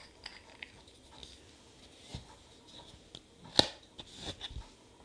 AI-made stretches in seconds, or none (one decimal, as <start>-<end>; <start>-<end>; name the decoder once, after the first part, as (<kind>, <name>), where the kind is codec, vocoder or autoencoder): none